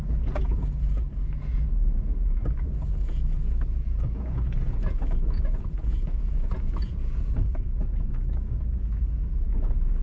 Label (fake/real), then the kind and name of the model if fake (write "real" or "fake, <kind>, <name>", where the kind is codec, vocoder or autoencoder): fake, vocoder, Vocos